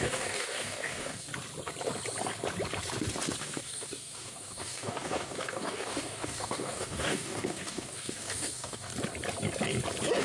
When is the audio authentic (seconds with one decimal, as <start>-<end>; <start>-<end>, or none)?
1.3-3.4; 8.9-10.2